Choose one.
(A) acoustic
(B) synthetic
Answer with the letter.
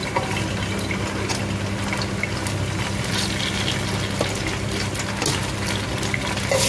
A